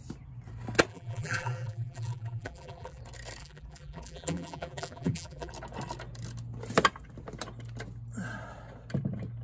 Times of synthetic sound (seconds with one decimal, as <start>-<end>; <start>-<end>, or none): 0.9-3.0; 3.4-5.5

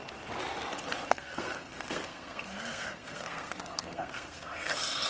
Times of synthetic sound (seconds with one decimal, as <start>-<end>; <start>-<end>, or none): 1.1-5.1